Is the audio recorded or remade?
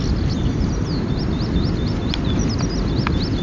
recorded